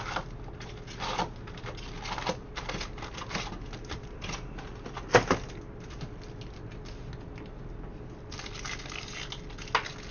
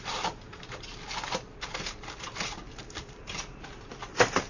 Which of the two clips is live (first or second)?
first